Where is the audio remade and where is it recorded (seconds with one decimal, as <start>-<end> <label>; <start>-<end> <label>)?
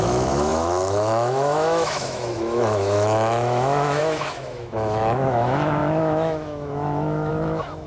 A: 0.0-7.9 remade